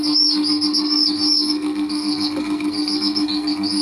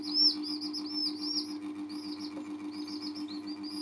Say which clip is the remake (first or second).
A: first